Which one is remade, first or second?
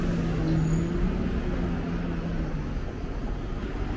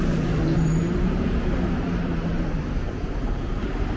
second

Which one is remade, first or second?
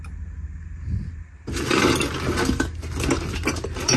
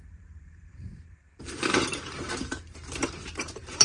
second